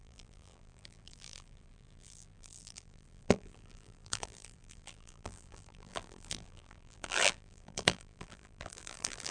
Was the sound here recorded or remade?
remade